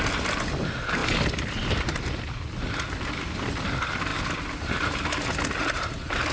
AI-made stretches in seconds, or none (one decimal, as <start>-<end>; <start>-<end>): none